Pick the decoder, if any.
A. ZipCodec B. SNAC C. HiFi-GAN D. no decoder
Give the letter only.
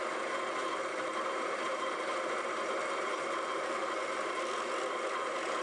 D